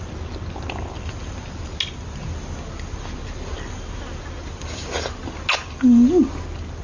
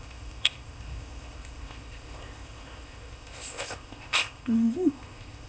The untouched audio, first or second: first